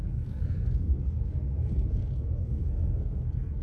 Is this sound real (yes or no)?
no